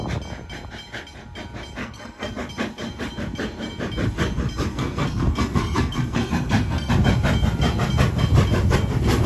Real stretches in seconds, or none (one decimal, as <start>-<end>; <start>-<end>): 0.0-1.8; 2.3-4.7; 6.9-9.3